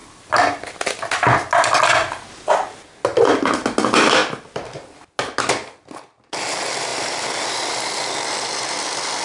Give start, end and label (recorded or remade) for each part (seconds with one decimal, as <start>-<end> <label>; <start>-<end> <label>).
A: 0.0-9.2 recorded

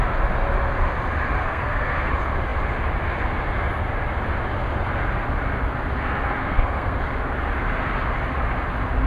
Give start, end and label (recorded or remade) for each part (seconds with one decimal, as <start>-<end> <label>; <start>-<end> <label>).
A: 0.0-1.4 recorded; 1.4-2.1 remade; 2.1-6.4 recorded; 6.4-7.0 remade; 7.0-9.1 recorded

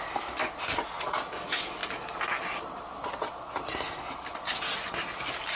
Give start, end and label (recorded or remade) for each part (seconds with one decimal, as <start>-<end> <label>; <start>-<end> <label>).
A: 0.0-5.6 recorded

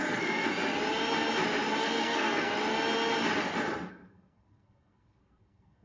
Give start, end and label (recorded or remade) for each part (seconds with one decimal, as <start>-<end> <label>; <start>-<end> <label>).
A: 0.0-0.5 remade; 0.5-1.8 recorded; 1.8-2.5 remade; 2.5-3.9 recorded; 3.9-5.8 remade

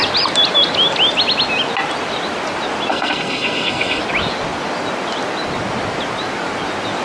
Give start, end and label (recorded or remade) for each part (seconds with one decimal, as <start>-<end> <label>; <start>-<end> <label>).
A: 0.0-2.9 recorded; 2.9-4.0 remade; 4.0-7.0 recorded

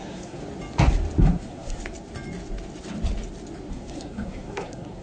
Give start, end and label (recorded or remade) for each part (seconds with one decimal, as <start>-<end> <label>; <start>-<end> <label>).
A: 0.0-0.4 remade; 0.4-1.2 recorded; 1.2-1.8 remade; 1.8-3.7 recorded; 3.7-5.0 remade

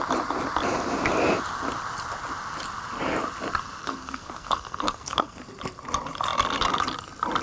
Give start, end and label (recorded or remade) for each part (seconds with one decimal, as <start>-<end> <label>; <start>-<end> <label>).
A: 0.0-3.8 recorded; 3.8-5.4 remade; 5.4-7.4 recorded

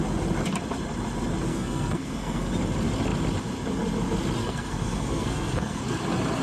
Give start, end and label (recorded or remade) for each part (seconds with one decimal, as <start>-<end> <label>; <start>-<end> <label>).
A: 0.0-1.5 recorded; 1.5-2.5 remade; 2.5-4.4 recorded; 4.4-5.8 remade; 5.8-6.4 recorded